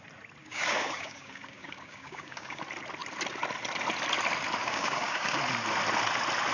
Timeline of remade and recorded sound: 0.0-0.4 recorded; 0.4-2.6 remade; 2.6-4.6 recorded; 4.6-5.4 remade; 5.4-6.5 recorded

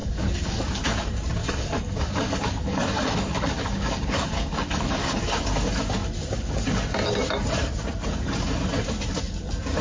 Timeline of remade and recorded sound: 0.0-0.8 remade; 0.8-1.4 recorded; 1.4-5.2 remade; 5.2-9.8 recorded